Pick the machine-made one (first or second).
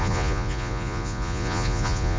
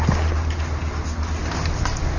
first